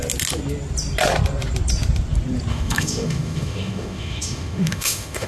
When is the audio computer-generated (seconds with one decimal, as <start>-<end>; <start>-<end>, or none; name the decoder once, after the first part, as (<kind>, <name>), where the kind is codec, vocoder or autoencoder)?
2.5-5.3 (autoencoder, DAC-VAE)